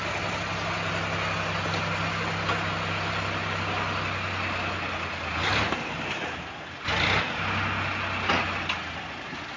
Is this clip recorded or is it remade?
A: recorded